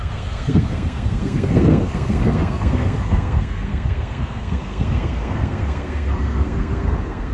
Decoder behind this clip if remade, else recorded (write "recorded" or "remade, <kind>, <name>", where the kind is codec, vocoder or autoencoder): remade, codec, SNAC